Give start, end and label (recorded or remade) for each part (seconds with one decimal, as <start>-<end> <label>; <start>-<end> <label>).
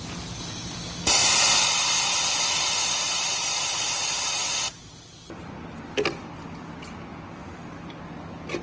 0.0-8.6 recorded